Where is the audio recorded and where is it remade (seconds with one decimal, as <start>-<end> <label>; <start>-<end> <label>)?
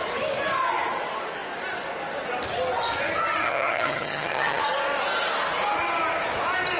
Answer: 0.0-3.4 recorded; 3.4-4.6 remade; 4.6-6.8 recorded